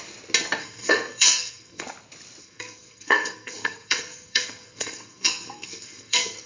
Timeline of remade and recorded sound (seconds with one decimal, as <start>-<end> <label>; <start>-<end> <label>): 0.0-0.6 recorded; 0.6-1.8 remade; 1.8-2.4 recorded; 2.4-6.5 remade